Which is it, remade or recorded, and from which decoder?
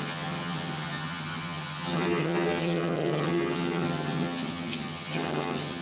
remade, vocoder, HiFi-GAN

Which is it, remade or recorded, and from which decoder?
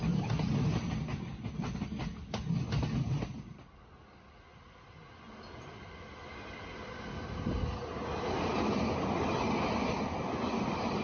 recorded